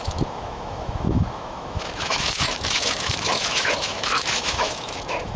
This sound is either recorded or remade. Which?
remade